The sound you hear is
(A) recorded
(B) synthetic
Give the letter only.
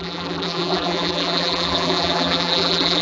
B